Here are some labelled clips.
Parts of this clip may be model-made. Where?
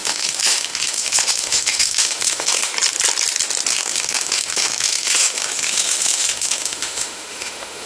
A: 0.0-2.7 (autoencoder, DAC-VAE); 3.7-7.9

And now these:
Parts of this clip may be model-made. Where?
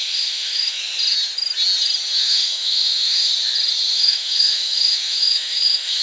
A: 0.0-0.8 (autoencoder, DAC-VAE); 2.2-3.3; 3.9-6.0